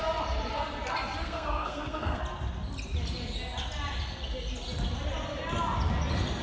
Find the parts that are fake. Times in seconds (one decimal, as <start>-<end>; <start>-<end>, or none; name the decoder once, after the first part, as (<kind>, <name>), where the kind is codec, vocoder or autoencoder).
1.2-2.2 (codec, SNAC)